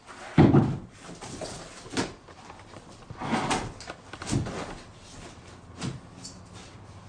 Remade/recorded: recorded